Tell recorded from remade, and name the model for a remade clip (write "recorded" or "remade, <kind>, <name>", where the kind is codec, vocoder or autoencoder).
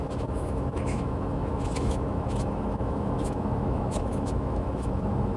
remade, autoencoder, DAC-VAE